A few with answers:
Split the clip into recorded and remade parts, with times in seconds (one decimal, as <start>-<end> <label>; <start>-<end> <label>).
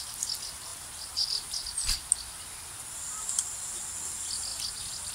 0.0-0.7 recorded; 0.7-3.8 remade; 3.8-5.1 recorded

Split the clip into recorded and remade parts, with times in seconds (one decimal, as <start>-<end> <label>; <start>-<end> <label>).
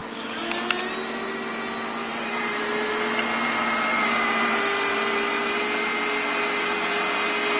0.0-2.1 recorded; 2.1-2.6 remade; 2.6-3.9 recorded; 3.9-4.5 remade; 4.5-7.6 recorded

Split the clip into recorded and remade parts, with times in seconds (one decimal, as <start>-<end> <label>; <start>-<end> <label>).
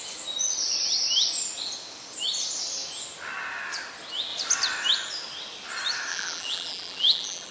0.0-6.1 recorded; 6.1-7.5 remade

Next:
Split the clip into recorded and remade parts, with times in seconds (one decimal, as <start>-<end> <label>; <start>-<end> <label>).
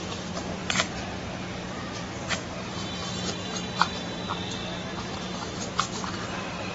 0.0-0.6 remade; 0.6-1.8 recorded; 1.8-3.0 remade; 3.0-3.8 recorded; 3.8-6.7 remade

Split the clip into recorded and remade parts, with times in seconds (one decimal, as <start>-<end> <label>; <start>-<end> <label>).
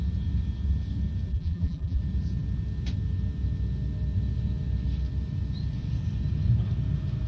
0.0-1.3 recorded; 1.3-2.0 remade; 2.0-7.3 recorded